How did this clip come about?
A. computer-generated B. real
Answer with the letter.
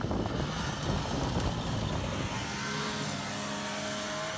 B